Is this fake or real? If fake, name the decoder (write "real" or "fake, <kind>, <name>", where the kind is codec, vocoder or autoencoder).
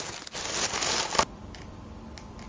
real